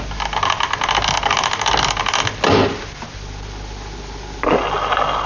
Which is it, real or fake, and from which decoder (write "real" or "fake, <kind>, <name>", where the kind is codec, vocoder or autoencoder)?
real